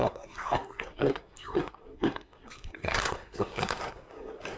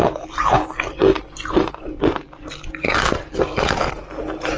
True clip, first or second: second